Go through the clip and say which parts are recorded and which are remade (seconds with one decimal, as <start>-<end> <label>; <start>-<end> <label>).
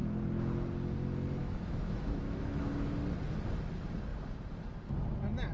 0.0-1.4 recorded; 1.4-2.7 remade; 2.7-5.5 recorded